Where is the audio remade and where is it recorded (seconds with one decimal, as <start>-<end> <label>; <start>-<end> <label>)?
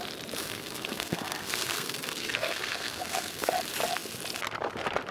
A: 0.0-0.4 recorded; 0.4-3.5 remade; 3.5-5.1 recorded